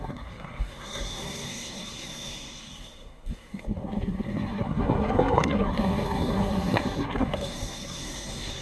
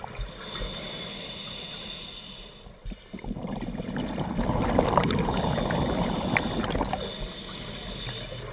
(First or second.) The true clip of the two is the second